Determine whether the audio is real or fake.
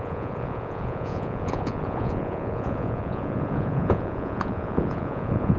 fake